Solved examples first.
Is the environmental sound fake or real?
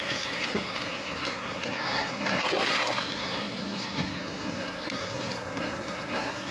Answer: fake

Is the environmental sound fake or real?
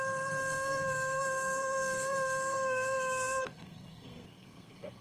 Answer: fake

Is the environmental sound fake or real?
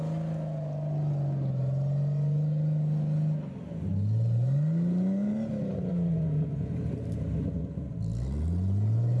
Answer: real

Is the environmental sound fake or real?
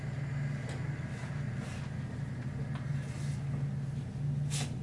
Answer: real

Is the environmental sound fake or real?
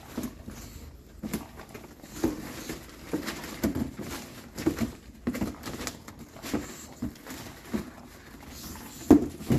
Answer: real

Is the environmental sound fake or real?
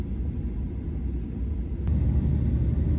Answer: real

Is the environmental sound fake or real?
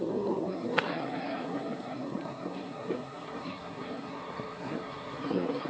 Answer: fake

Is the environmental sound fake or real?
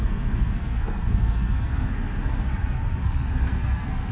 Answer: fake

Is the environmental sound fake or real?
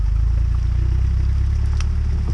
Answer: real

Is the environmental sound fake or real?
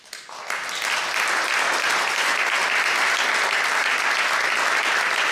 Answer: real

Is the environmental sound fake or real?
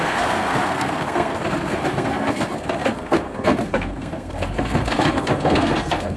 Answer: fake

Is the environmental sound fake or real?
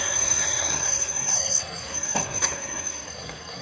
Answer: fake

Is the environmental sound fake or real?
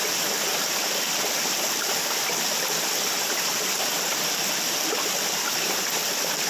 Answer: real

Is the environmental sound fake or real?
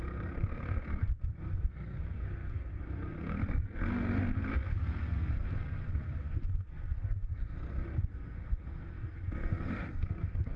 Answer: fake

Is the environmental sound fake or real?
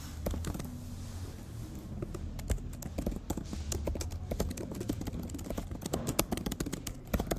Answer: real